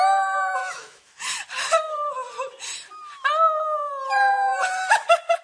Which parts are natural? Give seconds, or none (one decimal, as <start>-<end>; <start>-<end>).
0.0-0.6; 1.2-5.4